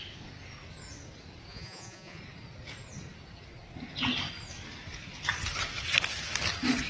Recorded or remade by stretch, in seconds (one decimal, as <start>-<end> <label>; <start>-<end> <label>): 0.0-1.5 recorded; 1.5-2.2 remade; 2.2-6.9 recorded